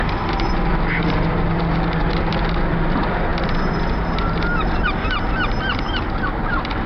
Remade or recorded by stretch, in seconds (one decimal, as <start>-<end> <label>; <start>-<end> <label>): 0.0-6.9 recorded